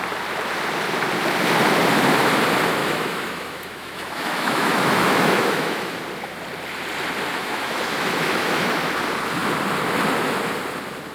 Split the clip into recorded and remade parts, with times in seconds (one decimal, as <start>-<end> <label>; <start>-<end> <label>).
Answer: 0.0-2.8 recorded; 2.8-6.0 remade; 6.0-7.3 recorded; 7.3-8.8 remade; 8.8-11.1 recorded